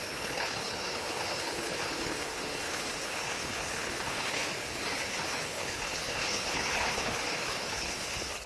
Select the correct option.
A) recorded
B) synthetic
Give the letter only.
B